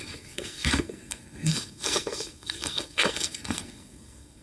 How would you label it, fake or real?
fake